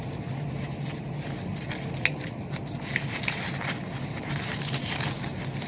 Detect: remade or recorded recorded